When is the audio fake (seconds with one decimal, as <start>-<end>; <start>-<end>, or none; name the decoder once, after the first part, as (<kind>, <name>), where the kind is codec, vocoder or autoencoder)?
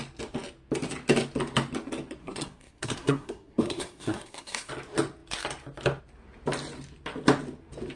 2.2-4.7 (codec, SNAC)